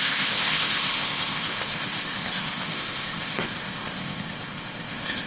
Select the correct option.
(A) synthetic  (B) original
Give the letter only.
A